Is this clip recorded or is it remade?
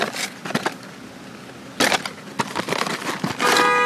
recorded